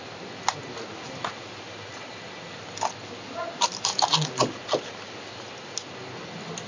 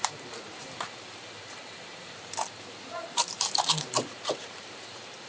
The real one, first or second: first